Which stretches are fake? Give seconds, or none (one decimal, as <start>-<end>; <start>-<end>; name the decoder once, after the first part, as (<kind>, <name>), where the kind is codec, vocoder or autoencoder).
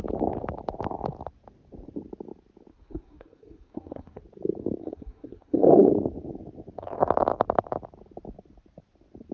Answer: 2.7-4.2 (codec, SNAC); 4.8-5.9